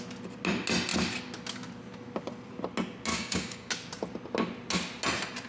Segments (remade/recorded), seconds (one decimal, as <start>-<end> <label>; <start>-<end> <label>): 0.0-3.1 recorded; 3.1-3.7 remade; 3.7-5.5 recorded